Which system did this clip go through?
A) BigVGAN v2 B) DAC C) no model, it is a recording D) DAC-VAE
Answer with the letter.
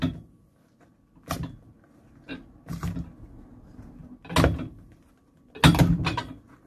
C